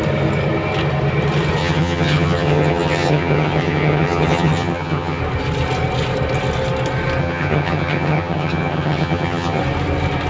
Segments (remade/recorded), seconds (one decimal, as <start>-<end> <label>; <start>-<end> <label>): 0.0-1.6 recorded; 1.6-5.2 remade; 5.2-7.2 recorded; 7.2-9.6 remade; 9.6-10.3 recorded